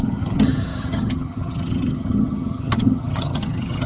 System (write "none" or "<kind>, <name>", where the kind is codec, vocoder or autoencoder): vocoder, HiFi-GAN